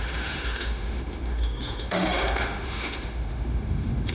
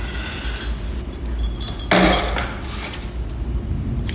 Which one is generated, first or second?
first